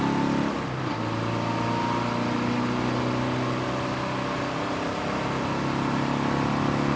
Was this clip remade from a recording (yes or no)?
no